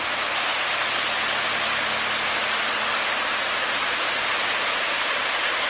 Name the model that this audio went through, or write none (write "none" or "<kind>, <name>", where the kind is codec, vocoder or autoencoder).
none